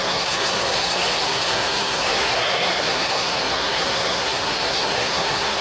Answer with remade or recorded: remade